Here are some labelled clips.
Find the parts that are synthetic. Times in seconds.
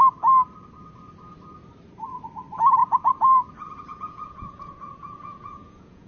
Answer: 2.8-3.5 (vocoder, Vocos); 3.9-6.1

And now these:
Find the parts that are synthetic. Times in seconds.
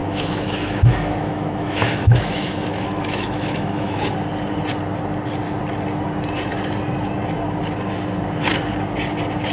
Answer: 0.0-4.0 (autoencoder, DAC-VAE)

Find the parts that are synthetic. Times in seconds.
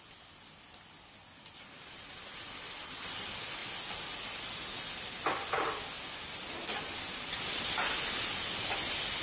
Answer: none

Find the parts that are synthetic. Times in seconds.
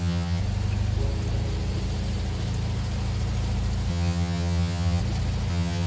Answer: 0.0-0.4 (vocoder, HiFi-GAN); 3.9-5.0; 5.5-5.9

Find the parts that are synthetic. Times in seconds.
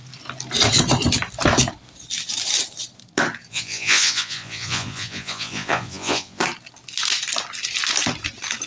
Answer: 3.5-6.4 (vocoder, Vocos)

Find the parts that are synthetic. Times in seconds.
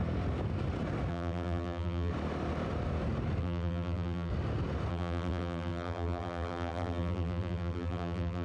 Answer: 1.1-2.1 (vocoder, BigVGAN v2); 3.4-4.3; 4.9-8.4